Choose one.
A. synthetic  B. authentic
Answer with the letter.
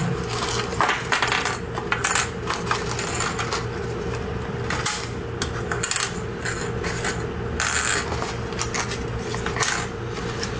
B